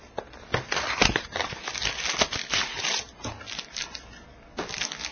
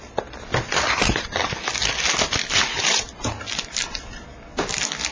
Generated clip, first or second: second